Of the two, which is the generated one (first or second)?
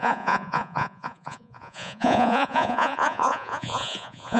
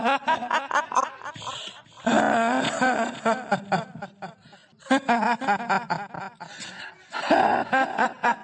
first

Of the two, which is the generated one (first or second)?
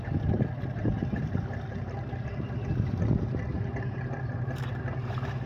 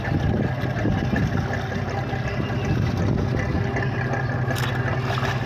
first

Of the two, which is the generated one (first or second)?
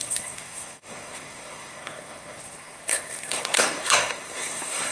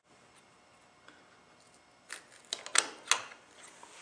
first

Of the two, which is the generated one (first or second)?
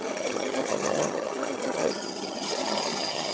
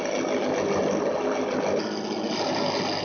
first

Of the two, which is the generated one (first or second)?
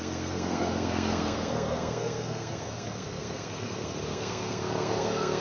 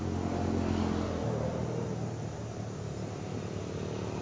first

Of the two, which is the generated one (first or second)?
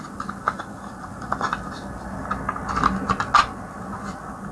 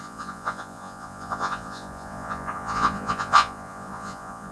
second